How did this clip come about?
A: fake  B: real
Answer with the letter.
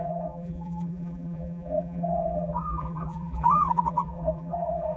A